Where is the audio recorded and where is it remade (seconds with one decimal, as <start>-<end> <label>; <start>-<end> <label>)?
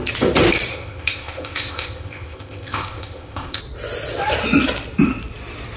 0.0-0.7 recorded; 0.7-3.6 remade; 3.6-5.8 recorded